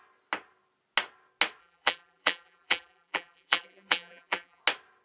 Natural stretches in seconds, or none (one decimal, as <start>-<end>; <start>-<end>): 0.0-1.6; 4.6-5.0